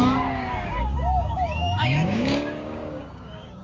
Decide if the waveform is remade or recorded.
remade